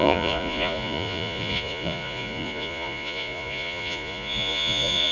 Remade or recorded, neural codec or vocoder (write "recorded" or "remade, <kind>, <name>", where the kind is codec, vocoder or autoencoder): remade, vocoder, Vocos